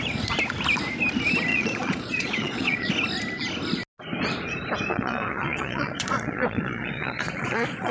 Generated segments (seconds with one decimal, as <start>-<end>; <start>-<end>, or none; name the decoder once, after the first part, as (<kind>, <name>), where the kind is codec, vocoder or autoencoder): 1.5-2.9 (vocoder, Vocos); 4.9-7.9